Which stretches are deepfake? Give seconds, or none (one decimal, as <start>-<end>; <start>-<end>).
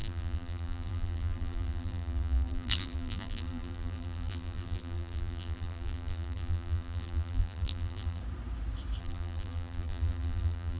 0.0-8.2; 9.0-10.8